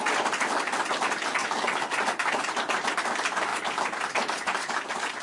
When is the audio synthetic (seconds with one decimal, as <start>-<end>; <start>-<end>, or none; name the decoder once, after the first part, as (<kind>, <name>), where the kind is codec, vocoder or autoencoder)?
none